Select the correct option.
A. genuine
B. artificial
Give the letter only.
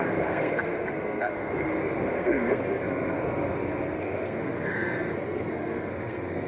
B